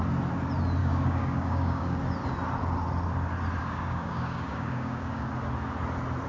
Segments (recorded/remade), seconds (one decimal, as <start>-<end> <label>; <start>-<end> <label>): 0.0-0.8 recorded; 0.8-2.0 remade; 2.0-3.6 recorded; 3.6-5.3 remade; 5.3-6.3 recorded